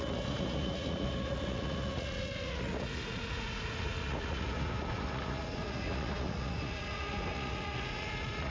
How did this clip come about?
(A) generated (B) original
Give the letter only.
A